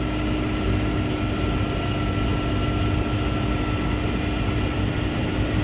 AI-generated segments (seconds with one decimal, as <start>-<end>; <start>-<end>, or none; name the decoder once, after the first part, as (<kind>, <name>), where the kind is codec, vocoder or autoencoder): none